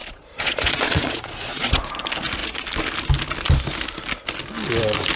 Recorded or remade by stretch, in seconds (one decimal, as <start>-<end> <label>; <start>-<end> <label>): 0.0-1.9 remade; 1.9-5.2 recorded